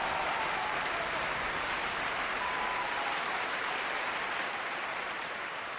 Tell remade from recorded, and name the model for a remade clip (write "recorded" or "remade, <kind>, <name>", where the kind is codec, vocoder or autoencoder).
remade, vocoder, BigVGAN v2